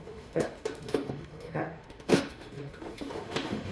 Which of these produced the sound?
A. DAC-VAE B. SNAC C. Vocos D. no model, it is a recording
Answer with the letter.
A